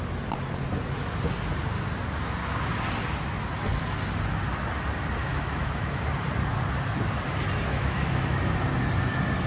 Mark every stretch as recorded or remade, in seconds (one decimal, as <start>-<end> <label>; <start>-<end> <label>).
0.0-5.2 recorded; 5.2-6.0 remade; 6.0-7.7 recorded; 7.7-8.4 remade; 8.4-9.5 recorded